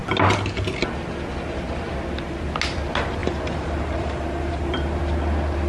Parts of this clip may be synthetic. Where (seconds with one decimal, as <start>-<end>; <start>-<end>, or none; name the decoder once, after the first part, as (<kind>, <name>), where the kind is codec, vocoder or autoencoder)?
3.2-5.0 (vocoder, BigVGAN v2)